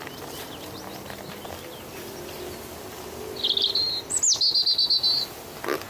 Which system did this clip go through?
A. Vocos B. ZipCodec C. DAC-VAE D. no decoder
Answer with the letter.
D